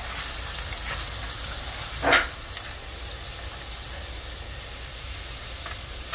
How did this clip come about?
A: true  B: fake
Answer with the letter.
A